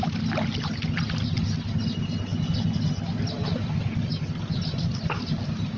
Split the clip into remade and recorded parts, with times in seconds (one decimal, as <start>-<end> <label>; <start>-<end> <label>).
0.0-5.8 recorded